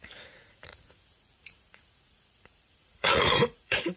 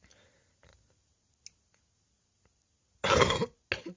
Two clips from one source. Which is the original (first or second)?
second